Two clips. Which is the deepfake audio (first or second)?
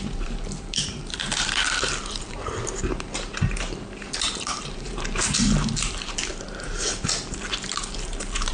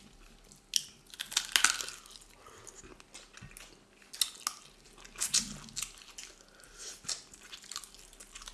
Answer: first